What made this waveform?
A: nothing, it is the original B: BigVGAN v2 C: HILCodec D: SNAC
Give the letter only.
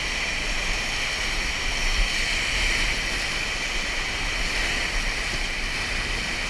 A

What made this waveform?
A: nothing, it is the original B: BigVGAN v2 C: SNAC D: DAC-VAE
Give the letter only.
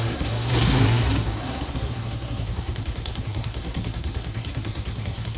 C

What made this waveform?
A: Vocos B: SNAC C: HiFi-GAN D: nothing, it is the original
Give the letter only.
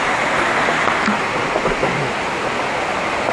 D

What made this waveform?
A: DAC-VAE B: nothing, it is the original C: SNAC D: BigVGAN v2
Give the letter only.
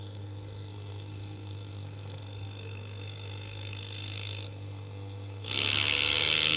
C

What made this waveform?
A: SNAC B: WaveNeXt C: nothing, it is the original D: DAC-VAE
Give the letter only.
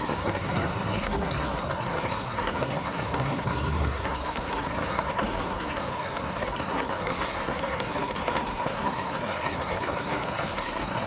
A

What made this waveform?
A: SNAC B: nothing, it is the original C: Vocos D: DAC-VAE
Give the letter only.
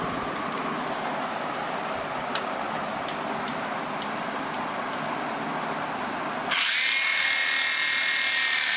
B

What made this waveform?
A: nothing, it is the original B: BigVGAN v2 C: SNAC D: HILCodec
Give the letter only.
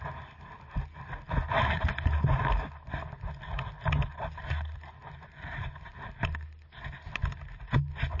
A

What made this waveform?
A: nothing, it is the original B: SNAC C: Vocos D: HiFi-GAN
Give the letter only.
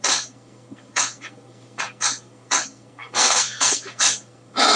B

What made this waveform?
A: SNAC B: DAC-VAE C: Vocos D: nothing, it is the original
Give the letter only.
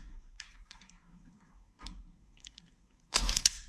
A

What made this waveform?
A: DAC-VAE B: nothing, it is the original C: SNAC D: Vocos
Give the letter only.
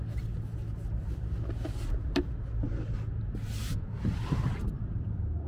B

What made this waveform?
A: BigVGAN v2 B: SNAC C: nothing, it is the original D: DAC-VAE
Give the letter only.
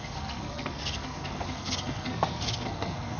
B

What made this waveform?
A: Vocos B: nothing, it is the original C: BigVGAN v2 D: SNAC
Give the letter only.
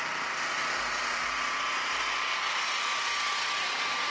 B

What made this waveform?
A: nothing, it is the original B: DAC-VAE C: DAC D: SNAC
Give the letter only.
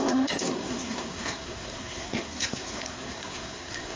D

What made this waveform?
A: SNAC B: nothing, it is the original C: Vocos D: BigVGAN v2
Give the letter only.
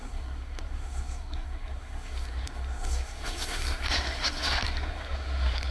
A